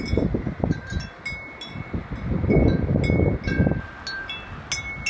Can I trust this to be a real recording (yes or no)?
yes